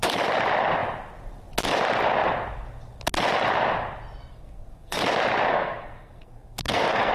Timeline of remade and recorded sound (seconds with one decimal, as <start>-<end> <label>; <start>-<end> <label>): 0.0-4.3 recorded; 4.3-5.0 remade; 5.0-5.5 recorded; 5.5-7.1 remade